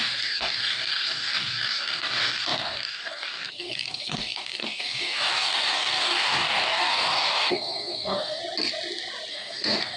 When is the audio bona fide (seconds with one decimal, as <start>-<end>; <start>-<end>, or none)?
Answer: 8.4-9.3